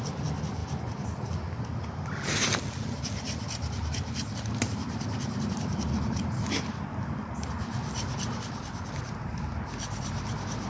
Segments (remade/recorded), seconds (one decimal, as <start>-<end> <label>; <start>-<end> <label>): 0.0-10.7 recorded